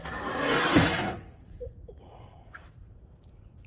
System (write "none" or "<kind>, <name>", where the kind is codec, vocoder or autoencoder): vocoder, Vocos